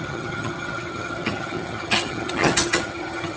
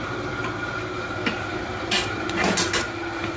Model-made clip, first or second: first